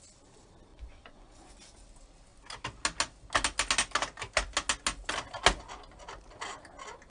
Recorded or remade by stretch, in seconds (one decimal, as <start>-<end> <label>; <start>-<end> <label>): 0.0-0.7 recorded; 0.7-1.5 remade; 1.5-7.1 recorded